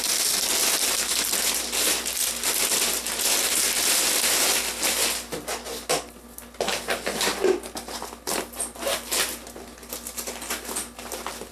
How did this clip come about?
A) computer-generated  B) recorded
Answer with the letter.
B